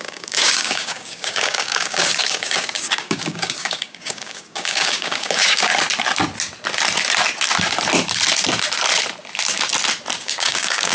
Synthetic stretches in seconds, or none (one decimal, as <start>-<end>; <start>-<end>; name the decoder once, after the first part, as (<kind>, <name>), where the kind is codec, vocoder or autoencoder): 0.0-5.7 (codec, DAC); 10.2-10.9